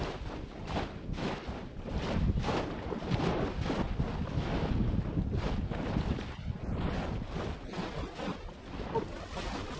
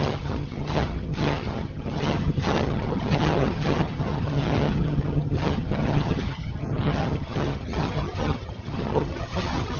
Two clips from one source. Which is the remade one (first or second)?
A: second